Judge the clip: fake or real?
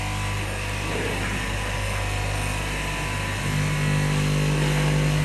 real